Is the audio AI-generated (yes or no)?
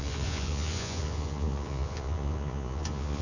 yes